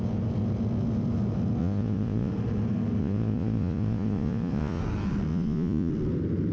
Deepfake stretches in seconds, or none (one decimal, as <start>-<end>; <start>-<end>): 1.6-2.3; 3.0-4.8; 5.3-5.9